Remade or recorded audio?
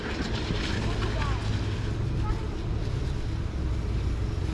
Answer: recorded